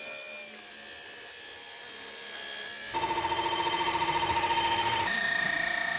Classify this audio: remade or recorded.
recorded